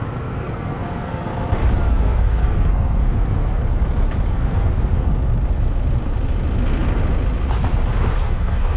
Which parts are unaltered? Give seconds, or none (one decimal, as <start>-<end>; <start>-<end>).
1.3-1.9; 3.6-4.3; 5.1-8.2